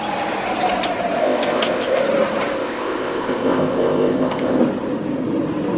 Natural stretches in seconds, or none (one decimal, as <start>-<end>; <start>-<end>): 0.0-1.2; 2.0-2.6; 4.6-5.8